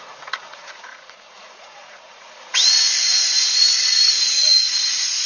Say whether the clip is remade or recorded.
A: remade